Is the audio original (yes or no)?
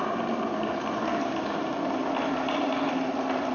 yes